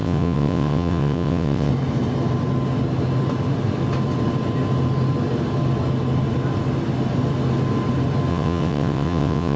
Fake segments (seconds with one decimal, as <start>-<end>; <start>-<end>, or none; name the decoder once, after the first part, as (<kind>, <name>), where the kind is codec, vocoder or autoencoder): 0.0-1.7 (vocoder, WaveNeXt); 8.3-9.6